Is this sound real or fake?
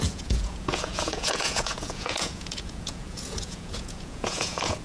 fake